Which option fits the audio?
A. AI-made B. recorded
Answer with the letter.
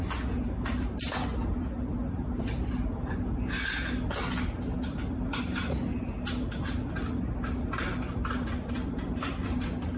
B